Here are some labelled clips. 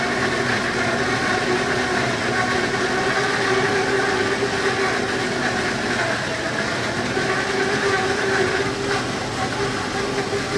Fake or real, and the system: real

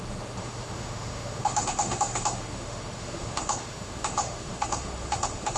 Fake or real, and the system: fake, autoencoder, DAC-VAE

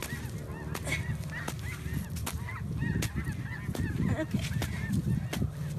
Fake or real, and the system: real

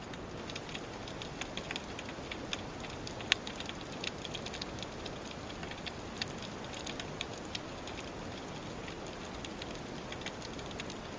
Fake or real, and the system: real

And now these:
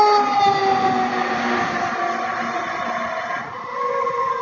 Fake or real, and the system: real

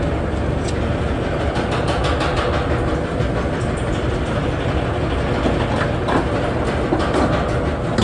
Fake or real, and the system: real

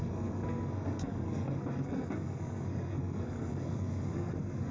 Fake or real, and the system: fake, codec, SNAC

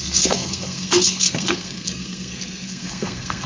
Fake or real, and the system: fake, codec, SNAC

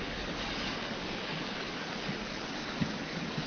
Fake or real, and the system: fake, codec, DAC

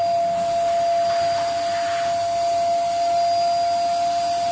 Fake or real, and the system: real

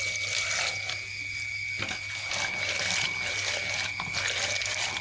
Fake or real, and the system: real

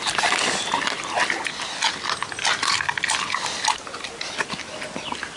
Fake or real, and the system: real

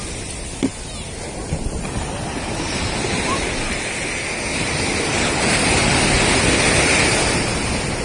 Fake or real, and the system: real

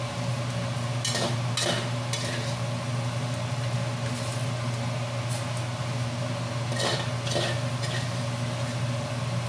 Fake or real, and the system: real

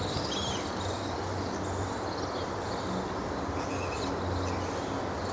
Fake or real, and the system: real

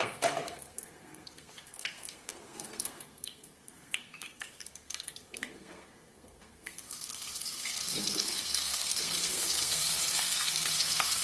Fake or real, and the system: fake, codec, SNAC